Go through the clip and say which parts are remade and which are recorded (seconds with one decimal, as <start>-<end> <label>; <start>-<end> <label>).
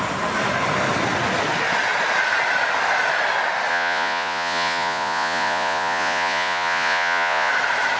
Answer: 0.0-3.7 recorded; 3.7-7.5 remade; 7.5-8.0 recorded